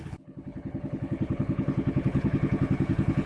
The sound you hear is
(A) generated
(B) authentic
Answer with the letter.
A